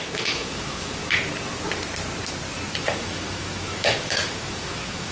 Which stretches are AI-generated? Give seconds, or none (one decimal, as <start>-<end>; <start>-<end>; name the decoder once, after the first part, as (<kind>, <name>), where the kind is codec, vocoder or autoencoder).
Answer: 0.0-1.0 (autoencoder, DAC-VAE); 2.8-5.1